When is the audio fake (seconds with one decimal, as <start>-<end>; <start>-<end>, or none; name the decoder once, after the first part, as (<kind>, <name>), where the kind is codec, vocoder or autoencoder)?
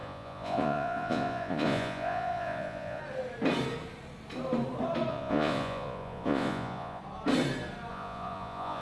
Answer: 0.0-3.0 (vocoder, Vocos); 5.1-7.0; 7.9-8.8